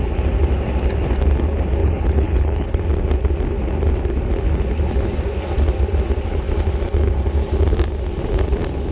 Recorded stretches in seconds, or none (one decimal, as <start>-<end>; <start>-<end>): 0.0-1.8; 2.8-8.9